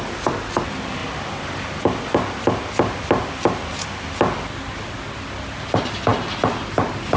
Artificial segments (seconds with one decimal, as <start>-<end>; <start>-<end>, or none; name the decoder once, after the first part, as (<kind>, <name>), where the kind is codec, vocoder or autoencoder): none